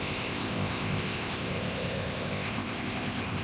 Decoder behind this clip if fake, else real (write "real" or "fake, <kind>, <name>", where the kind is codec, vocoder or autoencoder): fake, codec, ZipCodec